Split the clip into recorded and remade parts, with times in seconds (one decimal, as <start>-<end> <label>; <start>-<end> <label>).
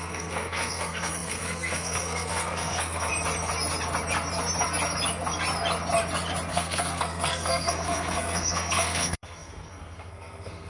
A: 0.0-3.1 remade; 3.1-6.5 recorded; 6.5-10.7 remade